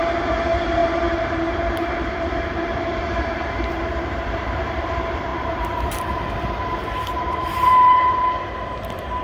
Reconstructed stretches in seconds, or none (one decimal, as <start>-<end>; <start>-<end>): 0.0-9.2